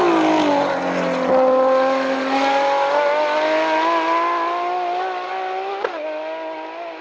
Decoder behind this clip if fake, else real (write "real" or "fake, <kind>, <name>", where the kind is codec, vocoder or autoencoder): real